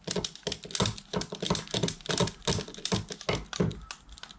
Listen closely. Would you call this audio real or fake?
real